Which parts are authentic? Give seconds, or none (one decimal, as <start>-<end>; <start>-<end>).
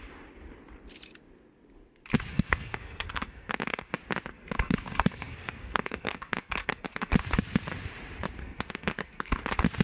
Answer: 0.0-2.3; 3.9-4.3; 7.1-8.4; 9.4-9.8